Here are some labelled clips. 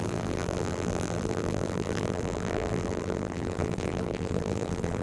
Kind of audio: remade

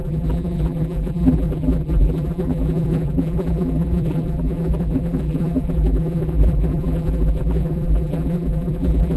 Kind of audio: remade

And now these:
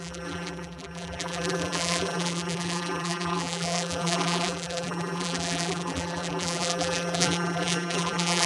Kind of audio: remade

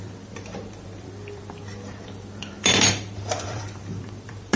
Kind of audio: remade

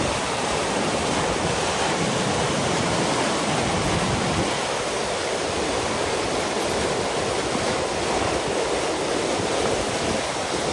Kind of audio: remade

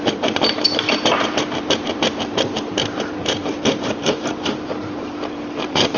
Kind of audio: remade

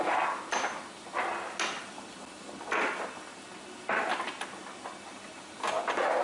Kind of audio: recorded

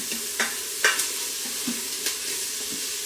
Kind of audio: remade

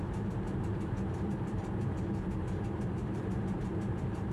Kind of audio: remade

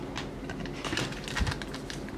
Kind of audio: recorded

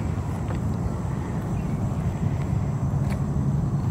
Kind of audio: recorded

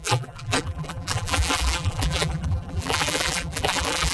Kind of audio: remade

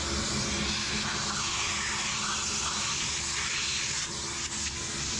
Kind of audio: recorded